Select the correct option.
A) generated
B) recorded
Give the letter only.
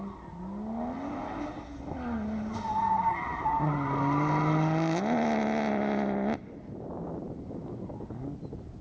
B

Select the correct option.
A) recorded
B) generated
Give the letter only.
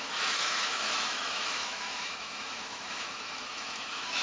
B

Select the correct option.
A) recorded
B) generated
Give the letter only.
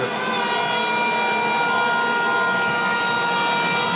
A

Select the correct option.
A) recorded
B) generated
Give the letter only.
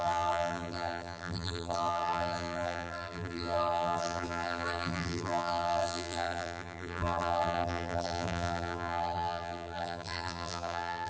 B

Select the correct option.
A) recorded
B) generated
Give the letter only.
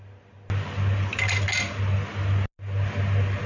A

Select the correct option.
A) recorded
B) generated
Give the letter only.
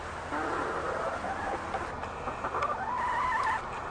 A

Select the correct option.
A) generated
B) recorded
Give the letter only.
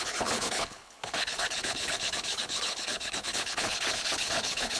A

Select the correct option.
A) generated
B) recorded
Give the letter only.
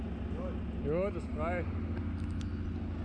B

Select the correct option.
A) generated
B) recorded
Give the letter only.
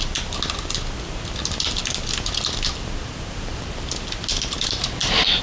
B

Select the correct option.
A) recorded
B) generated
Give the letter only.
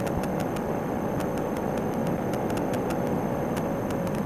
A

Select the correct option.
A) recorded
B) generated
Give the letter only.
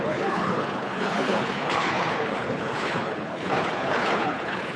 B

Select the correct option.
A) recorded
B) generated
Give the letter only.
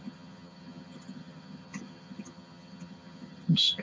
B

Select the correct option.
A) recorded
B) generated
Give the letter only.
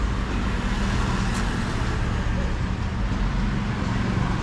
A